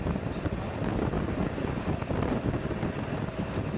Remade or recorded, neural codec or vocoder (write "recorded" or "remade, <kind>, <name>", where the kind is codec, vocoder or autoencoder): recorded